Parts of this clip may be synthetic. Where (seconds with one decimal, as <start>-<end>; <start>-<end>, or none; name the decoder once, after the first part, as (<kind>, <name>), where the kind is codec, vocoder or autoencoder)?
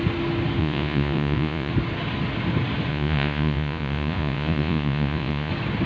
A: 0.6-1.7 (vocoder, Vocos); 2.9-5.5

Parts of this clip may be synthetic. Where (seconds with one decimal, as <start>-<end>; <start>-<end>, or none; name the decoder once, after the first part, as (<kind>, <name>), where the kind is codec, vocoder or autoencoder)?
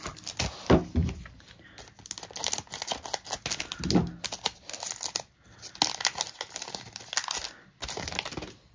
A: none